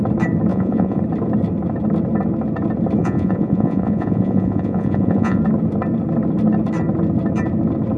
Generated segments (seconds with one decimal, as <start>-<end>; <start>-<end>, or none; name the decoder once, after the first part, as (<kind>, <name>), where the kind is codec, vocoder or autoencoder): 0.5-1.0 (vocoder, Vocos); 3.0-5.4